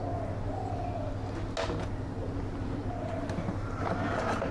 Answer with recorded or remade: recorded